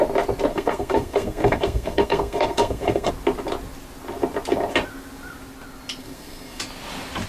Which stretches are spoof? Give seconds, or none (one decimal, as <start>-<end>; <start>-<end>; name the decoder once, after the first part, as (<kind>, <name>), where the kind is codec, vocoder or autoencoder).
0.5-3.1 (codec, SNAC); 6.0-6.6